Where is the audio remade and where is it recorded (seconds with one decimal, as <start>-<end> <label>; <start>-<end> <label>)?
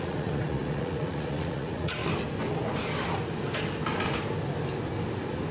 0.0-2.0 remade; 2.0-5.5 recorded